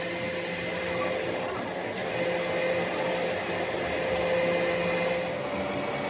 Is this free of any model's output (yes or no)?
yes